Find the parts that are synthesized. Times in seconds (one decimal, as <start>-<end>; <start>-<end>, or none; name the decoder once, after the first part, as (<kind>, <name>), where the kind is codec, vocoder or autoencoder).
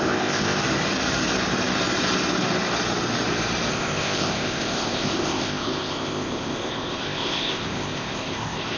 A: 0.0-0.6 (codec, ZipCodec); 3.7-8.8